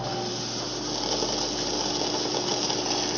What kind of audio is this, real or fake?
real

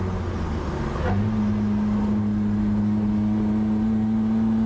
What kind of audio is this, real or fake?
real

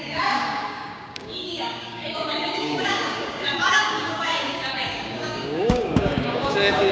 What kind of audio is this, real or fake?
fake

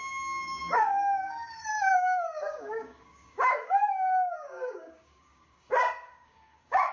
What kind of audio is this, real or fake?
fake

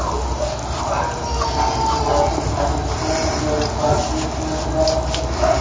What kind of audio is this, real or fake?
real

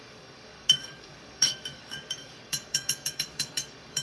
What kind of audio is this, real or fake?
fake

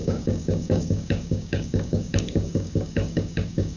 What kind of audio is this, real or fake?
fake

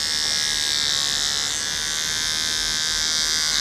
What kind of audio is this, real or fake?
real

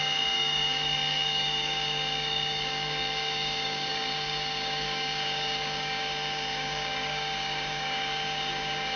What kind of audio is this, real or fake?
fake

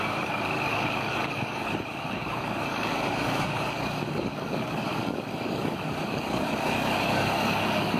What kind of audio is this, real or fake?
fake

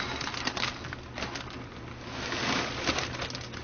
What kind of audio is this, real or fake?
real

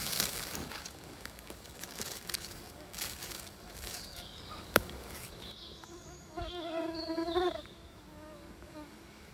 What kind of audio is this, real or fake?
fake